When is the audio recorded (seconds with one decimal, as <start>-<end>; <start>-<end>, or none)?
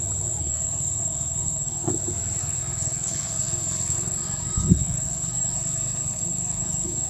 0.0-0.4; 1.9-2.4